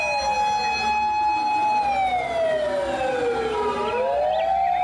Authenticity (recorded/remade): recorded